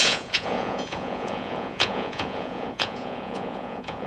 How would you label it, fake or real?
fake